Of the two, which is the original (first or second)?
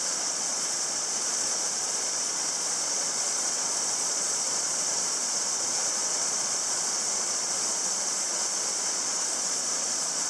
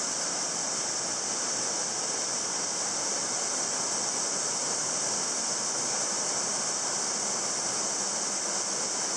second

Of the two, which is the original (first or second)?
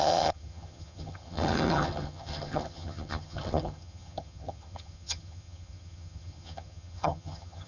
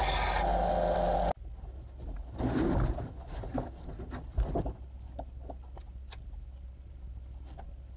second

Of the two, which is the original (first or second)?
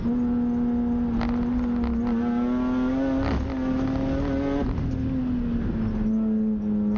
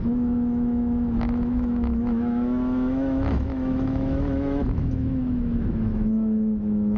first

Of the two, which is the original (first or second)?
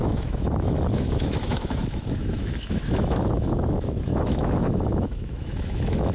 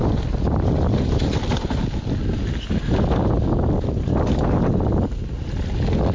second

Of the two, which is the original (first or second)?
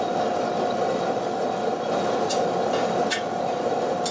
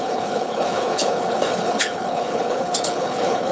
first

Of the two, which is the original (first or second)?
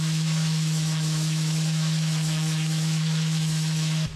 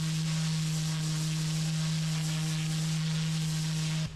second